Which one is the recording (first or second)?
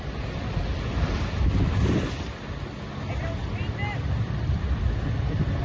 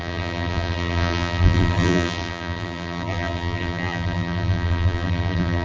first